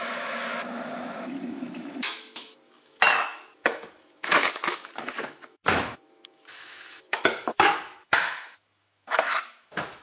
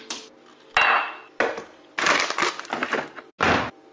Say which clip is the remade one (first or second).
first